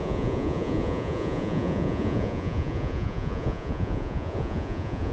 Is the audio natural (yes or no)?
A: no